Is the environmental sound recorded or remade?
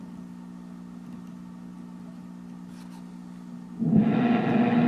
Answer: recorded